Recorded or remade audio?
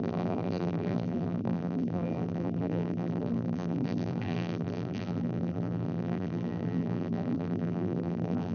remade